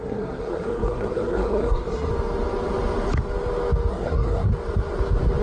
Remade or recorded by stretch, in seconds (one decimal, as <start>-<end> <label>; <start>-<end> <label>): 0.0-2.1 remade; 2.1-3.9 recorded; 3.9-4.5 remade; 4.5-5.4 recorded